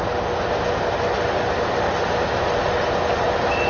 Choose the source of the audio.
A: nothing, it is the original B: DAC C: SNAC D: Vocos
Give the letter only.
A